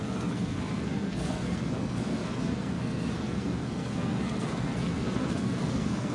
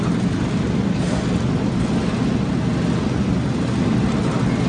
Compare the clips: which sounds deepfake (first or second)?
first